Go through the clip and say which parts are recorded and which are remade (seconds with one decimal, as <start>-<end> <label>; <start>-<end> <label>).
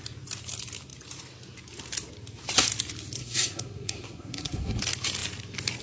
0.0-3.2 recorded; 3.2-4.8 remade; 4.8-5.8 recorded